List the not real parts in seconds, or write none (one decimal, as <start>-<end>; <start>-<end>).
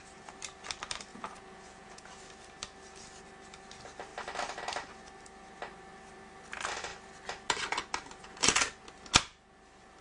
1.1-2.1